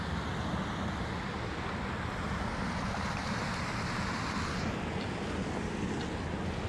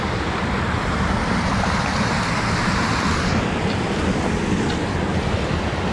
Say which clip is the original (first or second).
first